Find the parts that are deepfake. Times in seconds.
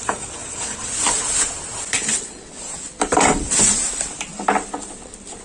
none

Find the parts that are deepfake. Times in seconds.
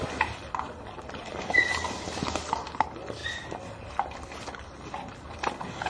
none